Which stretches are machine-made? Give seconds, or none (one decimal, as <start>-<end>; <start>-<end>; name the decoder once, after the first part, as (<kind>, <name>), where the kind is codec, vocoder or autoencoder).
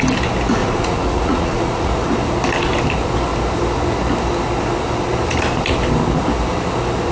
0.6-1.9 (vocoder, Vocos)